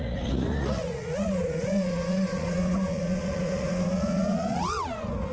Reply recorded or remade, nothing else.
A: remade